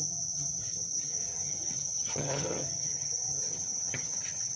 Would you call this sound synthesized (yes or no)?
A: yes